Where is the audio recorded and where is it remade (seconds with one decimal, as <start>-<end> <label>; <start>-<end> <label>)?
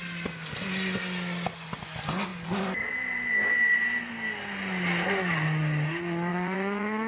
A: 0.0-6.3 recorded; 6.3-7.1 remade